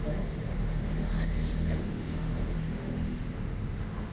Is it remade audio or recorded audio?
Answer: remade